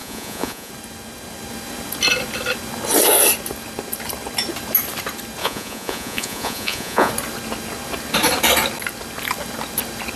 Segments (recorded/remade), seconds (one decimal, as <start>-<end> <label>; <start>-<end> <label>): 0.0-0.7 remade; 0.7-5.4 recorded; 5.4-7.1 remade; 7.1-10.2 recorded